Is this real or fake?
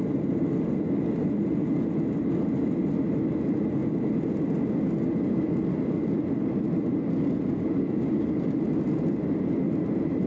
real